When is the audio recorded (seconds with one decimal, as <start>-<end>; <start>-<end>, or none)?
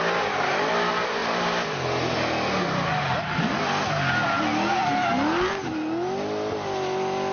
0.0-7.3